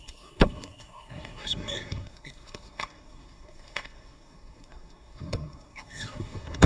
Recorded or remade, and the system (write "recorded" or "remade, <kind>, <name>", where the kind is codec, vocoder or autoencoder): remade, codec, SNAC